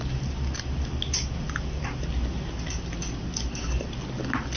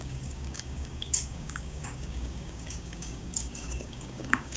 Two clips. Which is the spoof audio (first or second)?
second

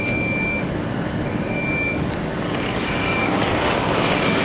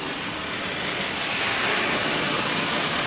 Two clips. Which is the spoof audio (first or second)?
first